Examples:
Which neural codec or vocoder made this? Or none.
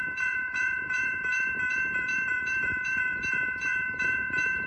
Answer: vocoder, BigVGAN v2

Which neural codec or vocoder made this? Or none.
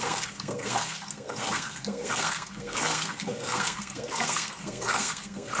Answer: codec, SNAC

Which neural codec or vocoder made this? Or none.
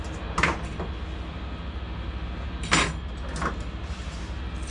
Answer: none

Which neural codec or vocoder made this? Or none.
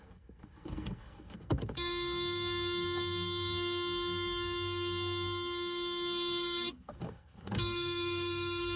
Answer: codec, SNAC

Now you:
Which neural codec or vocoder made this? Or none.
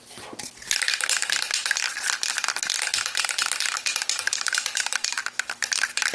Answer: none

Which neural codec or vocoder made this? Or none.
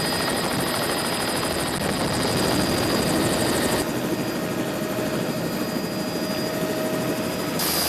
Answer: none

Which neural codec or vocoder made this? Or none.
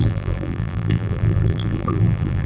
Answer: vocoder, BigVGAN v2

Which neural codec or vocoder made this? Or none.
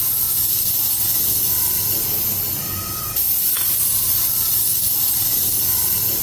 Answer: none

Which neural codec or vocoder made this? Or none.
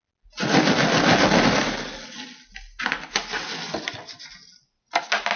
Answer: none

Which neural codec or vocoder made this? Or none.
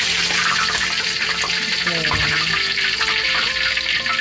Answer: none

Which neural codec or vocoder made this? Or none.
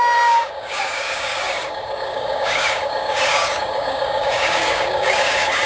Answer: codec, DAC